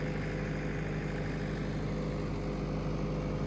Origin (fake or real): real